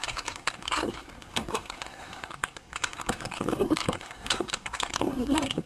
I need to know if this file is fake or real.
fake